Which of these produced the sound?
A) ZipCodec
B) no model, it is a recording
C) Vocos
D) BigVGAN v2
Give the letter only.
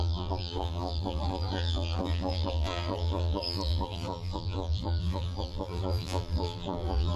D